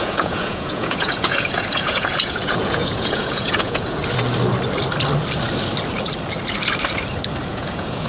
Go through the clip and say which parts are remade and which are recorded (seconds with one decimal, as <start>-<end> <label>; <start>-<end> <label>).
0.0-4.0 remade; 4.0-7.4 recorded; 7.4-8.1 remade